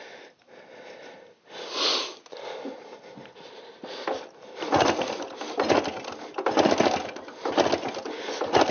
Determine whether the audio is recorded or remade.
recorded